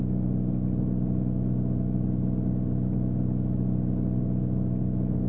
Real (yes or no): yes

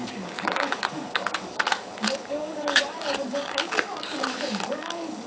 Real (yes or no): no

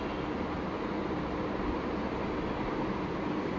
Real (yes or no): yes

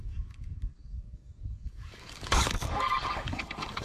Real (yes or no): no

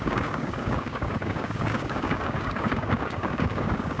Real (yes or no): no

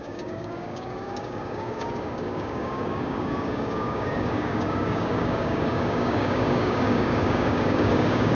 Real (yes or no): no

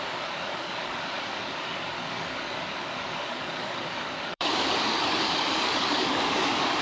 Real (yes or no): no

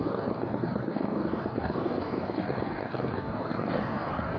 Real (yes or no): no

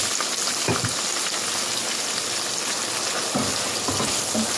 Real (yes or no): yes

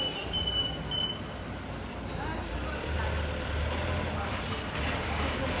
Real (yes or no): yes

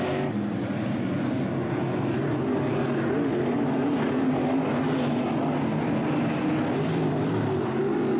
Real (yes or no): yes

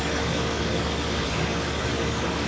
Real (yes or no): no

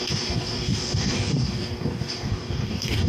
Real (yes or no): no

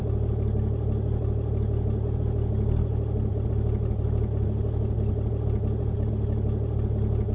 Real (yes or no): yes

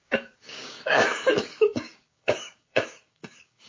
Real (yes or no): no